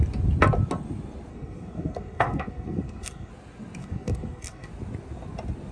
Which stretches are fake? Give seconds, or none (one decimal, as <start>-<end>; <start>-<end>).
1.3-3.3; 3.8-4.7